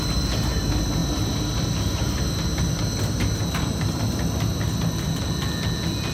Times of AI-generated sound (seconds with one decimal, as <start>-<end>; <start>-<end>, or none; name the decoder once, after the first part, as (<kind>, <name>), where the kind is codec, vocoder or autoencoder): none

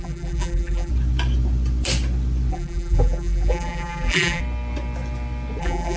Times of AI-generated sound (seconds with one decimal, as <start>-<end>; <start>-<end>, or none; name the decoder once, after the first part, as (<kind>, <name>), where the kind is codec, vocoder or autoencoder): 0.0-0.9 (vocoder, BigVGAN v2); 2.5-4.4; 5.6-6.0

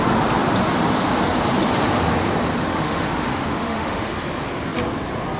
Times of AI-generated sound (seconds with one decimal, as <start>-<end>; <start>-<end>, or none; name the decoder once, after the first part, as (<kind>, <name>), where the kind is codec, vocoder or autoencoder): 2.7-4.0 (autoencoder, DAC-VAE)

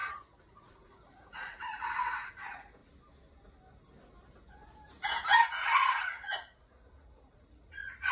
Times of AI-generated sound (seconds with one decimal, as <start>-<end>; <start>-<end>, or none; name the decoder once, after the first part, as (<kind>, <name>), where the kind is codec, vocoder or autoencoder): 0.0-2.8 (vocoder, Vocos); 5.9-8.1